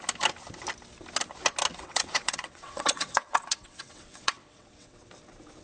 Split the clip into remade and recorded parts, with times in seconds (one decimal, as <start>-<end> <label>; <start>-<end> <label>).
0.0-1.7 recorded; 1.7-5.1 remade; 5.1-5.6 recorded